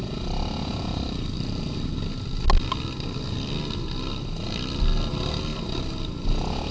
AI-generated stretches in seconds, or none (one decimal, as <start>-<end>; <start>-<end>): none